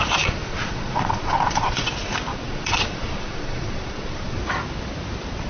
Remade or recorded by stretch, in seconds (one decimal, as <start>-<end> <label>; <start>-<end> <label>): 0.0-0.5 recorded; 0.5-1.9 remade; 1.9-2.3 recorded; 2.3-4.4 remade; 4.4-5.5 recorded